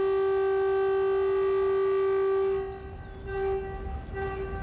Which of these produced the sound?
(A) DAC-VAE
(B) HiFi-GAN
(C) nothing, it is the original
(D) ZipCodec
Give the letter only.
C